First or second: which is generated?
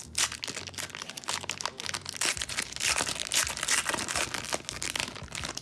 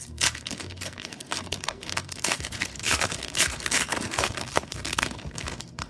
second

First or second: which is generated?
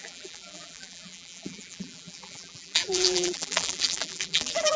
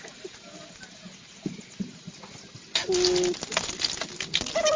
first